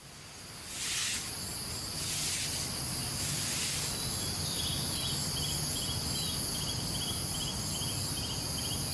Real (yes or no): yes